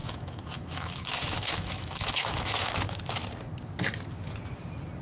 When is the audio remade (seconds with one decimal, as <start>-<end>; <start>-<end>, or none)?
0.0-3.0